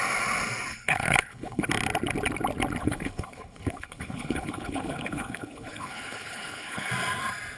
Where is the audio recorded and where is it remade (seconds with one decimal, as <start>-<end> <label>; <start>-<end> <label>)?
0.0-0.7 recorded; 0.7-1.7 remade; 1.7-2.8 recorded; 2.8-6.9 remade; 6.9-7.6 recorded